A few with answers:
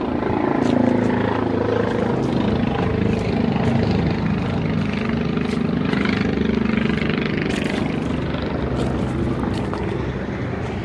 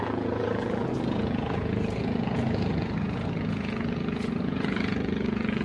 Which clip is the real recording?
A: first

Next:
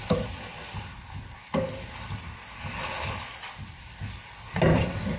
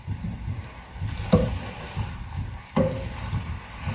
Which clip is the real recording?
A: first